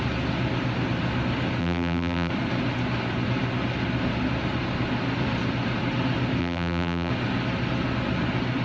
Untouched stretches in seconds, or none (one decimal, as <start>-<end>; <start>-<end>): 0.0-1.6; 2.3-6.4; 7.1-8.6